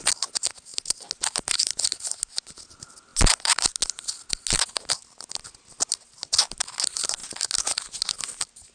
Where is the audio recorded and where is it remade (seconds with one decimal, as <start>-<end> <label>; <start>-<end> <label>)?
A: 0.0-8.7 recorded